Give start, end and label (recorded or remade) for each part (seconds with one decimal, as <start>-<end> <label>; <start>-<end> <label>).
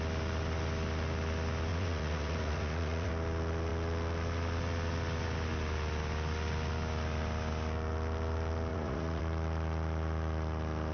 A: 0.0-1.7 recorded; 1.7-3.1 remade; 3.1-8.7 recorded; 8.7-9.2 remade; 9.2-10.9 recorded